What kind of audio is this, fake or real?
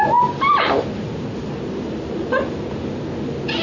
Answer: real